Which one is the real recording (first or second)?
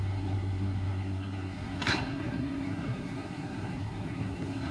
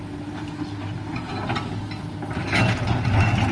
second